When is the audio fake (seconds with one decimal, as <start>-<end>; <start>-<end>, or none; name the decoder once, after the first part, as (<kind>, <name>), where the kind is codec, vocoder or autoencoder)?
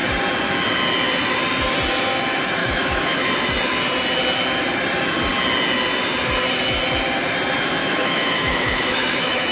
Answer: 2.6-3.3 (autoencoder, DAC-VAE); 7.8-9.5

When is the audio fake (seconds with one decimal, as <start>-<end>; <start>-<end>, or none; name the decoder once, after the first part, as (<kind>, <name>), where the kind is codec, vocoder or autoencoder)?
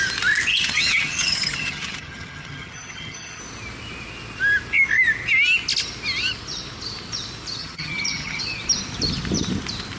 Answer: 0.5-3.4 (vocoder, HiFi-GAN); 7.6-8.4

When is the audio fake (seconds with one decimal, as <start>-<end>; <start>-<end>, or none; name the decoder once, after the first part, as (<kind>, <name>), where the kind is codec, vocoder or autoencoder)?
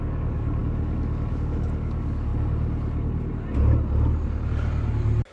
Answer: 0.0-2.3 (codec, DAC)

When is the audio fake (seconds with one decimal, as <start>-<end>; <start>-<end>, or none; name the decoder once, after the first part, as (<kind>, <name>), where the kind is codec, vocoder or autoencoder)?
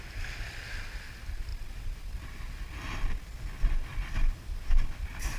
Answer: none